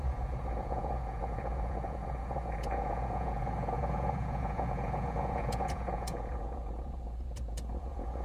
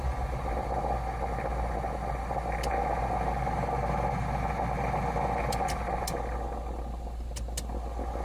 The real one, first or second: second